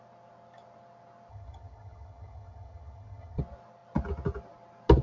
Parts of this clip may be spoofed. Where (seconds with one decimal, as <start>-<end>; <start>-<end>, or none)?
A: 1.3-3.4